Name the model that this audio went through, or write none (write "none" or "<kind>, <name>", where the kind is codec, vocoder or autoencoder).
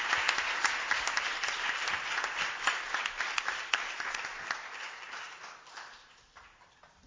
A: none